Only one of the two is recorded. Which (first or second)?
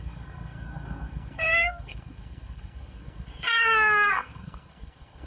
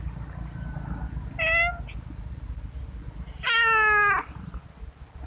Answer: second